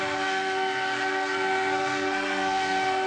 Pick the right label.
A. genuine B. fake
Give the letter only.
B